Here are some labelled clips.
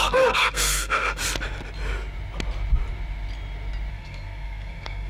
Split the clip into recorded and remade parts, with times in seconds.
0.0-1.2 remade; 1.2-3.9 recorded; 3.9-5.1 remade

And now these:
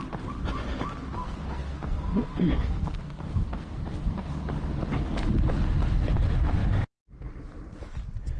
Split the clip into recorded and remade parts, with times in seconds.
0.0-1.2 recorded; 1.2-4.3 remade; 4.3-8.4 recorded

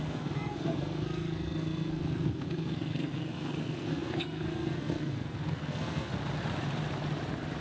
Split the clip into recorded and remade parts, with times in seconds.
0.0-6.1 remade; 6.1-7.6 recorded

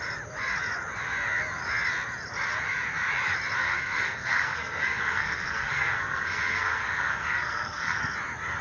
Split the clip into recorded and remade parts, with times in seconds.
0.0-3.6 recorded; 3.6-8.0 remade; 8.0-8.6 recorded

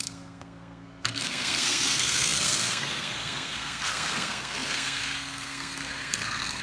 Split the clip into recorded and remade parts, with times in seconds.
0.0-6.6 remade

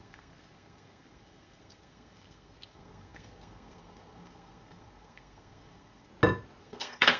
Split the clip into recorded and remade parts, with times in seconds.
0.0-6.1 remade; 6.1-6.6 recorded; 6.6-7.2 remade

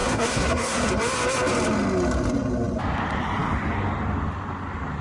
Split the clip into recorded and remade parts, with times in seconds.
0.0-0.9 remade; 0.9-5.0 recorded